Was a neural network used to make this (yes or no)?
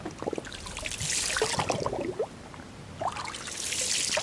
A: no